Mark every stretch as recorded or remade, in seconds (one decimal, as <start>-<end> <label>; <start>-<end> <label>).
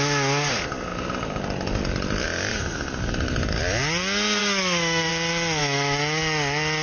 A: 0.0-4.4 recorded; 4.4-5.1 remade; 5.1-5.6 recorded; 5.6-6.2 remade; 6.2-6.8 recorded